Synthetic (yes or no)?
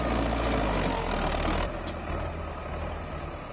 no